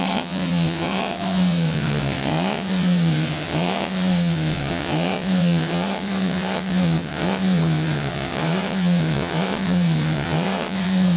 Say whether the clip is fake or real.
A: fake